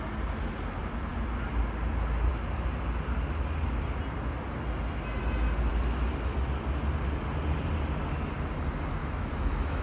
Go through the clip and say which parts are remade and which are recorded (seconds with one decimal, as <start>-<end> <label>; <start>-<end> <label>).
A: 0.0-9.0 recorded; 9.0-9.8 remade